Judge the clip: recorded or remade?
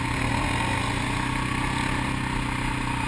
recorded